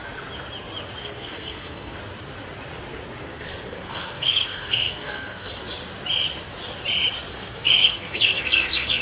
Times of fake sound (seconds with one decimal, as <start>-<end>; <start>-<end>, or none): 1.0-2.0; 3.2-5.6; 7.3-9.0